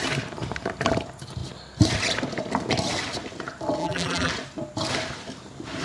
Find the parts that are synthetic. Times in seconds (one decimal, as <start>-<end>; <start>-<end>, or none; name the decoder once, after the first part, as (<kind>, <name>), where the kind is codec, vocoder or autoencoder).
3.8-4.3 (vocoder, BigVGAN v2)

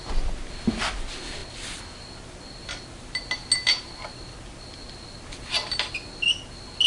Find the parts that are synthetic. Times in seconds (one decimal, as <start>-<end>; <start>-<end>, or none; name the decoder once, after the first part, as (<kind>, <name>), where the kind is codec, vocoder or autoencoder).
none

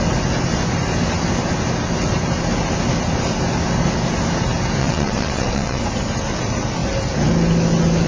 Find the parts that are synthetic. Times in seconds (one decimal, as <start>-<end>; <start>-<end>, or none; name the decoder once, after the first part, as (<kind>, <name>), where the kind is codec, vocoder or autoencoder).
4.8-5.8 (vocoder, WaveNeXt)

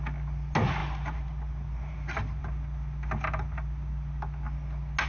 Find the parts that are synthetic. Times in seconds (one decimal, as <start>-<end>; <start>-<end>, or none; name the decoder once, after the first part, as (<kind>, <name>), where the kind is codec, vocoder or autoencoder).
0.8-2.4 (vocoder, BigVGAN v2)